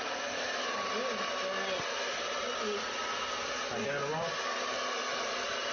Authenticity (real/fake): real